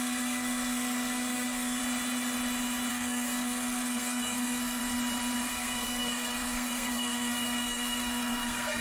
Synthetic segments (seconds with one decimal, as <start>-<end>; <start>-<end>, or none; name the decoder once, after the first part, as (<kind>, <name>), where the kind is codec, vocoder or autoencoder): 0.0-1.8 (codec, SNAC); 2.9-4.8; 5.5-8.8